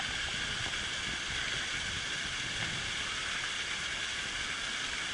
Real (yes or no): yes